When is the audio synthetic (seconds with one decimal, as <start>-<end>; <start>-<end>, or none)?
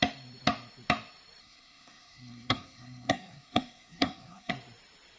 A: 1.4-4.5